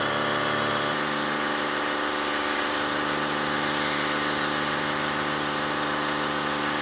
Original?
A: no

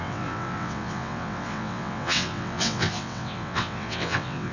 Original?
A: no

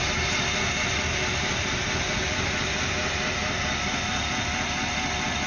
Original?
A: yes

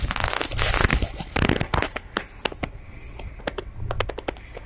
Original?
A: yes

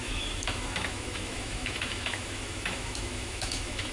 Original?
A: no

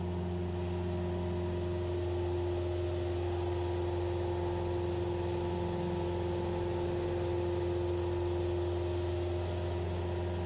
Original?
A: yes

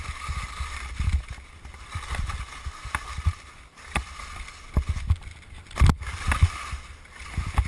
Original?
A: yes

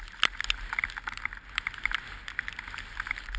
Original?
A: yes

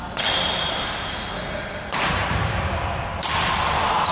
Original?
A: yes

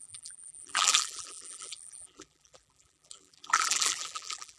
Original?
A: no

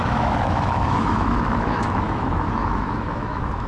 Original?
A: no